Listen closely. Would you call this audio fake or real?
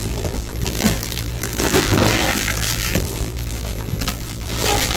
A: fake